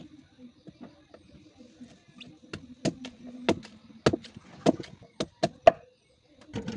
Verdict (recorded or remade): recorded